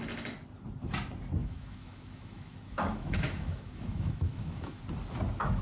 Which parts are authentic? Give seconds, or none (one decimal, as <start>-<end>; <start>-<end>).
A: 0.0-1.4; 4.8-5.6